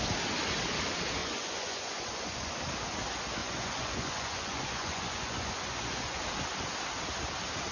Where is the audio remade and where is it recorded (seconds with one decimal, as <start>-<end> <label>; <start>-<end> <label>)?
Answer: 0.0-1.2 recorded; 1.2-2.5 remade; 2.5-3.4 recorded; 3.4-6.2 remade; 6.2-7.7 recorded